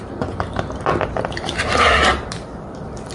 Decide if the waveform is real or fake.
fake